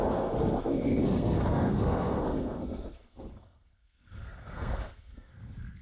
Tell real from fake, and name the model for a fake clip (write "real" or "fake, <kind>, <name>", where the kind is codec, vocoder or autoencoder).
fake, codec, SNAC